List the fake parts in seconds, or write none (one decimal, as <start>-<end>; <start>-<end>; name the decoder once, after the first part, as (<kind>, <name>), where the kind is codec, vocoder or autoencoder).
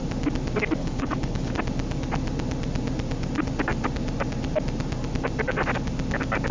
0.8-1.5 (codec, HILCodec)